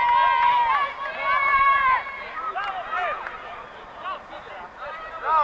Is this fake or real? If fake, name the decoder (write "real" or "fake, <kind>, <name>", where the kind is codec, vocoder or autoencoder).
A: real